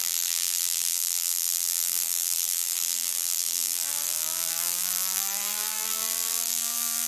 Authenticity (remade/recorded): remade